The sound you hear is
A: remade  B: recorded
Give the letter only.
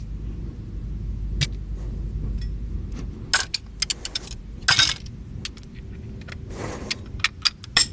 B